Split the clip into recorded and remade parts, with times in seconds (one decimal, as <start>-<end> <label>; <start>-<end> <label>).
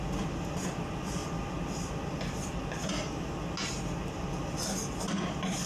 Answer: 0.0-5.7 recorded